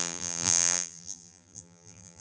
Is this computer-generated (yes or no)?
yes